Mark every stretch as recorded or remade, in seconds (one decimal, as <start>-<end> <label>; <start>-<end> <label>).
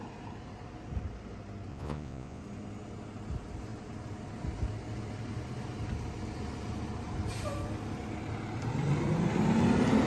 0.0-1.7 recorded; 1.7-2.4 remade; 2.4-10.1 recorded